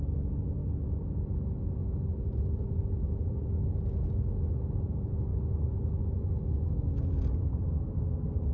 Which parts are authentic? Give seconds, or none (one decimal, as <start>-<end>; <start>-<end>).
0.0-8.5